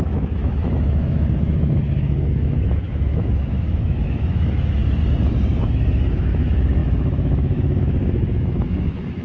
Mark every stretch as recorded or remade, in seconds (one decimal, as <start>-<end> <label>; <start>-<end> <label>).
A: 0.0-5.0 remade; 5.0-5.6 recorded; 5.6-9.2 remade